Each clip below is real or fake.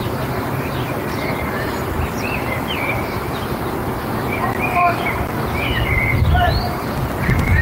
fake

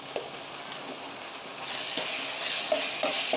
real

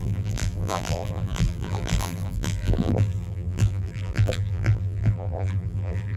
fake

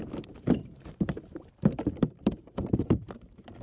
fake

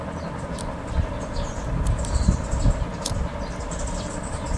real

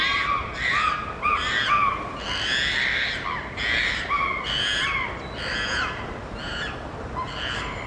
fake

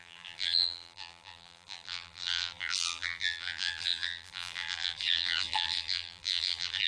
fake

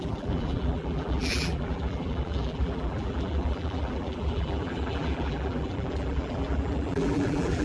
fake